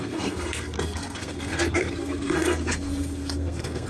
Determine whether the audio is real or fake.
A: fake